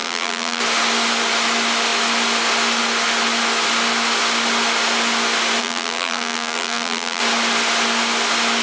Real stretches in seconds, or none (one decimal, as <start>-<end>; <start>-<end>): 0.6-5.6; 7.2-8.6